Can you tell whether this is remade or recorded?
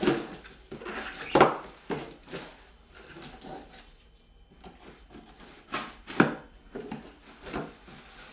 recorded